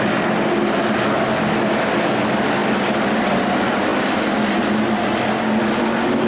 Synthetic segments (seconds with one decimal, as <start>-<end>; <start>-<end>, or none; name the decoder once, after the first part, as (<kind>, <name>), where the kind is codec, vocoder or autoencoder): none